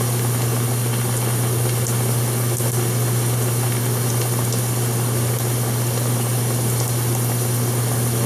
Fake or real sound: real